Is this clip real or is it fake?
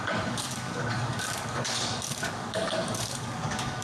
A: fake